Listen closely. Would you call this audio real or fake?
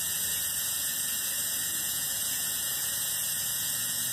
fake